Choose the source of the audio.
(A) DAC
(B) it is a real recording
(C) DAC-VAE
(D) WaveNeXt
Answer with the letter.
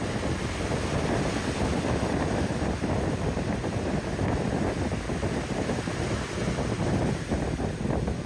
B